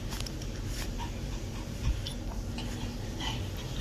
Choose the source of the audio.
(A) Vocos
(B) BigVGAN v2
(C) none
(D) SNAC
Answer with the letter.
C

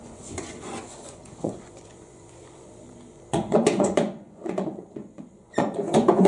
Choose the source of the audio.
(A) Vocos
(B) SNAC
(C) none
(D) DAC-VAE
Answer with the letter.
A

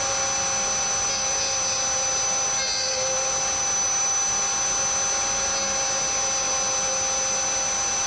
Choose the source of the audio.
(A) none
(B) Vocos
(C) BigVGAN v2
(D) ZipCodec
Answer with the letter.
A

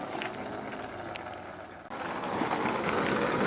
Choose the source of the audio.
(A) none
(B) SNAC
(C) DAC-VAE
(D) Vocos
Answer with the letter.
A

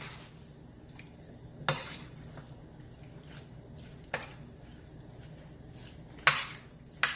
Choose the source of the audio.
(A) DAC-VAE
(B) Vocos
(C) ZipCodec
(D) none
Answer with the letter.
D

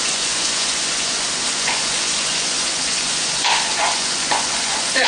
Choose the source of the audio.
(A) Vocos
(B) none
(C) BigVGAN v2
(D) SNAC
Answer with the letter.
A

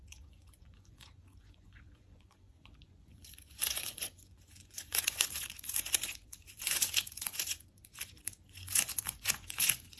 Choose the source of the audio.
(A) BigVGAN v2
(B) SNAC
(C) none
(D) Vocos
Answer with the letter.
D